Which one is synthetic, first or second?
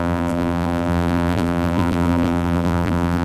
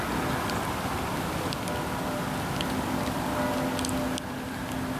first